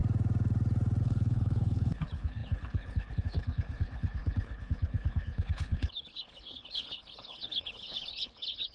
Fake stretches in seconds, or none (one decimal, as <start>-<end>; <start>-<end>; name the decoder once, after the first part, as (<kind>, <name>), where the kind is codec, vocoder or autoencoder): 1.0-8.7 (codec, HILCodec)